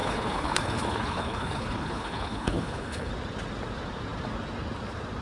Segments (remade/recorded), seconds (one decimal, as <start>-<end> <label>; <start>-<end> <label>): 0.0-3.1 remade; 3.1-5.2 recorded